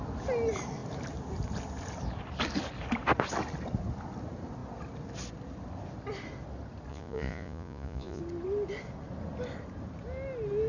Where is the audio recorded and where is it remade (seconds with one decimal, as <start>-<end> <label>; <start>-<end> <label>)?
0.0-6.9 recorded; 6.9-8.2 remade; 8.2-10.7 recorded